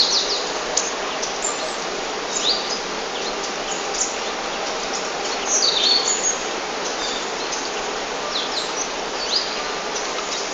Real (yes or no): yes